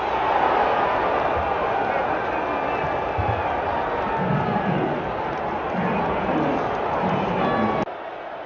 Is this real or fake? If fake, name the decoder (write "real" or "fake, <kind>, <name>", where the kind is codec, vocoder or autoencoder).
real